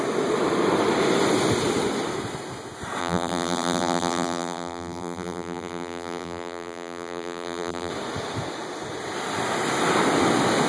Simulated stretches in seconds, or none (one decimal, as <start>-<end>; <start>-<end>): 3.0-7.9